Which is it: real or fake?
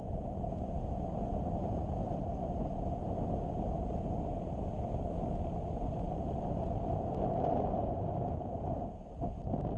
real